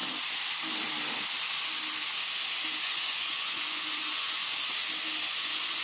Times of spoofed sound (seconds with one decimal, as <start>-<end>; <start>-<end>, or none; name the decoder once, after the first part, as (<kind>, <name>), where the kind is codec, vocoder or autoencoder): 2.8-4.4 (vocoder, Vocos); 5.3-5.8